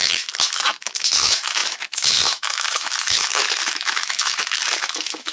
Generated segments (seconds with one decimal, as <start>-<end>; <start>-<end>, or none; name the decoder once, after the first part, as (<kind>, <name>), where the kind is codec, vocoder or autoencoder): 0.0-5.3 (autoencoder, DAC-VAE)